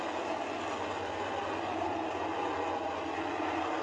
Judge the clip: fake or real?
real